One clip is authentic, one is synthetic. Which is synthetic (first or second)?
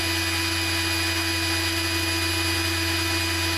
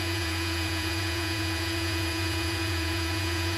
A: second